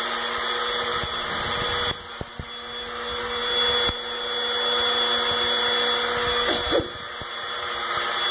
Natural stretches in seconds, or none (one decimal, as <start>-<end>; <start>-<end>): 0.0-8.3